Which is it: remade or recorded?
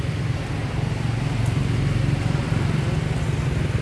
recorded